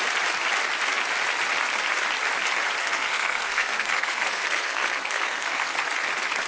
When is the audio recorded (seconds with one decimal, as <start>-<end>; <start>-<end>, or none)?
0.0-2.8; 5.8-6.5

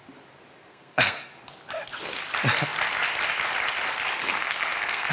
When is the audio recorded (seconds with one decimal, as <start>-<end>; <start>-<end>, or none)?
0.0-0.7; 1.2-4.2

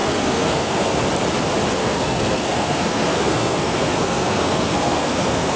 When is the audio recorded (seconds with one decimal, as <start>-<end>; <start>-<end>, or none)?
1.0-1.8

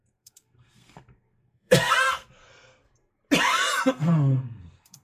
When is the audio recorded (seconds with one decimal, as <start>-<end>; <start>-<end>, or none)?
3.1-3.9